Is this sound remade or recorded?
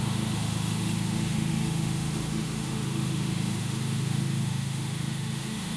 remade